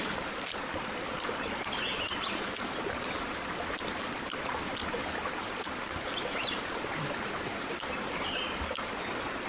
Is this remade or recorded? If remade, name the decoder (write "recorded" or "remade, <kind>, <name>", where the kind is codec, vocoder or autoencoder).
recorded